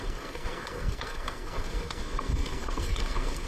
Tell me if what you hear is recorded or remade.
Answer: remade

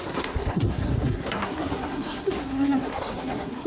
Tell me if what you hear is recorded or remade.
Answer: remade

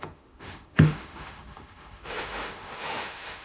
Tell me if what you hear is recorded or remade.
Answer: remade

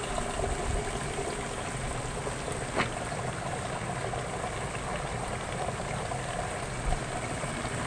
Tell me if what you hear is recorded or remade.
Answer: recorded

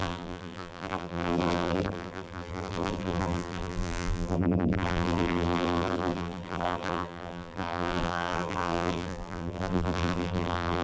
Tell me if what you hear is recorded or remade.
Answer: remade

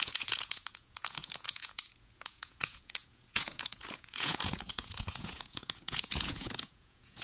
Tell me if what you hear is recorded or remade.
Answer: remade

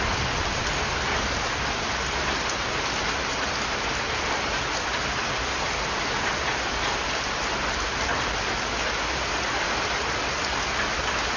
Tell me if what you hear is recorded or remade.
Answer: recorded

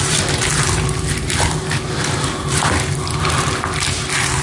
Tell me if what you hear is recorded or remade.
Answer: recorded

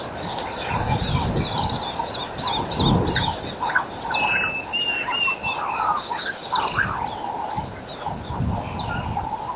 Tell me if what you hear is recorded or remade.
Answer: recorded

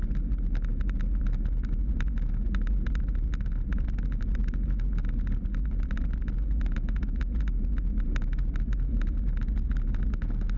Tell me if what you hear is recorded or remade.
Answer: recorded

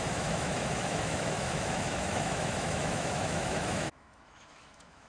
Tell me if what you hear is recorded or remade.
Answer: remade